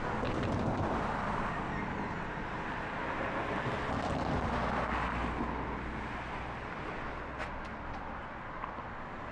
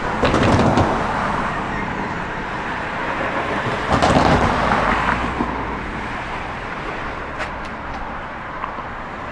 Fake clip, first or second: second